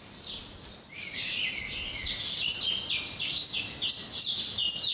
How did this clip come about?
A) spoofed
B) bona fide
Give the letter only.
B